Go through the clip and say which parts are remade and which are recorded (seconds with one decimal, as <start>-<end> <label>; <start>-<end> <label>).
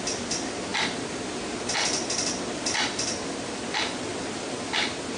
0.0-5.2 recorded